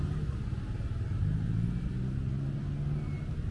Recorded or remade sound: recorded